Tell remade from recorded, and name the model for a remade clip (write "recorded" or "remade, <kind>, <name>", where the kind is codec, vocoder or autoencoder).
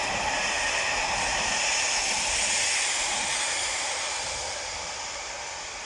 recorded